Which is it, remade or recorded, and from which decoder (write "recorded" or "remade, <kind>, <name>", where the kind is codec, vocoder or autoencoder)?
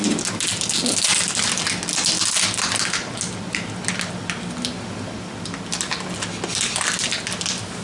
recorded